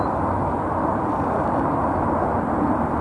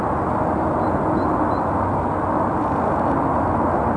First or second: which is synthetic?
first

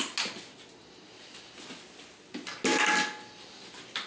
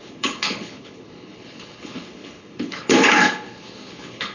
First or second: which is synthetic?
second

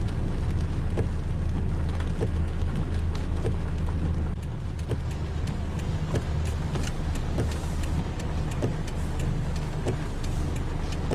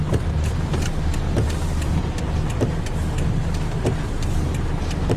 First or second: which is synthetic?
second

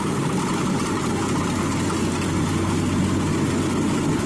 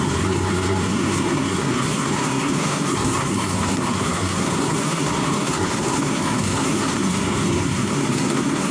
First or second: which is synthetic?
second